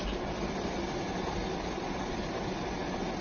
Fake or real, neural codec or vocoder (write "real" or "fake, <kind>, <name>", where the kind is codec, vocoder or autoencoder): real